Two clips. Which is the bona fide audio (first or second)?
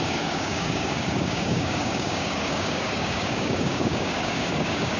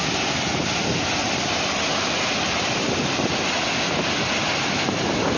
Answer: second